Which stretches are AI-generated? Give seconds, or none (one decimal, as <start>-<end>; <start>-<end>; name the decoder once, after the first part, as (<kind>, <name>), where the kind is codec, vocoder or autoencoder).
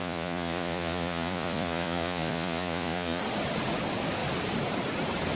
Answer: 0.0-3.2 (vocoder, Vocos)